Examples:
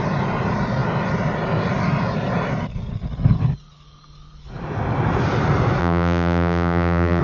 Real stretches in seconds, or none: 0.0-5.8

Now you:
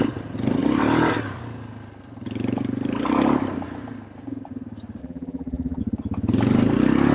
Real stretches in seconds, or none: 0.0-5.0; 5.8-7.1

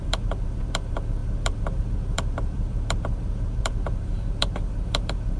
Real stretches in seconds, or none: none